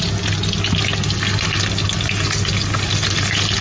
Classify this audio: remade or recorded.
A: recorded